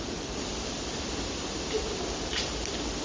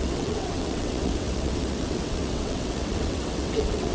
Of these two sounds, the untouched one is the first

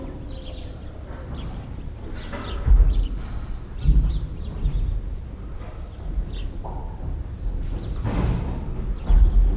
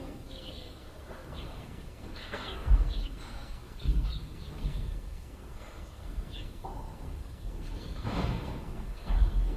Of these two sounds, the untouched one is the first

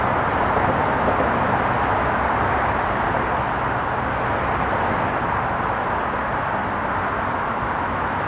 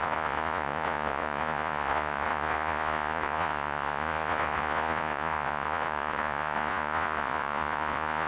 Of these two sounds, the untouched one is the first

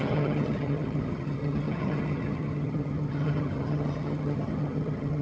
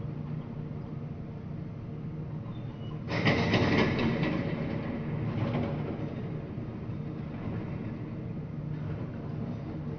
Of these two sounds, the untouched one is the second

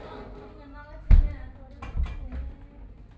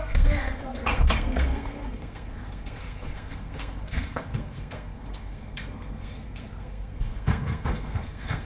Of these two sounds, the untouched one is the first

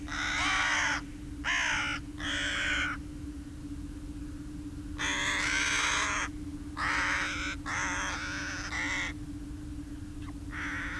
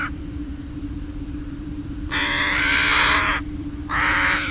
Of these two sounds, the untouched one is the first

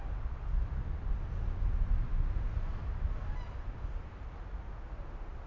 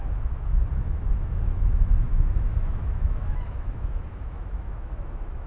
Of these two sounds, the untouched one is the first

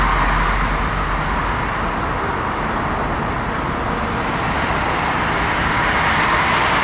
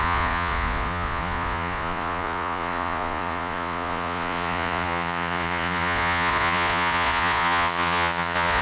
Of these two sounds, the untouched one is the first